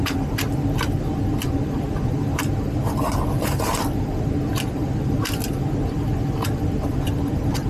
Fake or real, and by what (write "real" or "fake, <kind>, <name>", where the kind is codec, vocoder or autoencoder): real